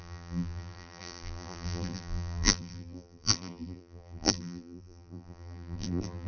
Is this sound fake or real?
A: fake